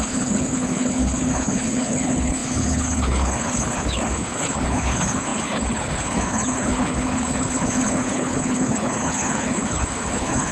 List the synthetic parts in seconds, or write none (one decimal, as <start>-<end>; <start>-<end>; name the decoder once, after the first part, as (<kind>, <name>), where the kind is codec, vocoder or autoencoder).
0.0-10.5 (codec, HILCodec)